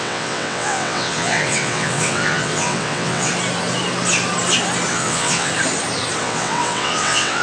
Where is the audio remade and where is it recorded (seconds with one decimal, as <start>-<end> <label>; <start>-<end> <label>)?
0.0-3.3 remade; 3.3-4.9 recorded; 4.9-5.5 remade; 5.5-6.2 recorded; 6.2-7.4 remade